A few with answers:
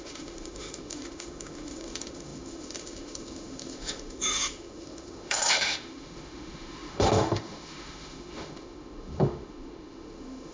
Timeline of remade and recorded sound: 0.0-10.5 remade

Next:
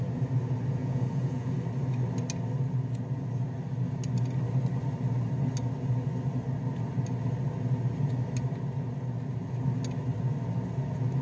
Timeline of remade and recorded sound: 0.0-0.8 recorded; 0.8-1.5 remade; 1.5-11.2 recorded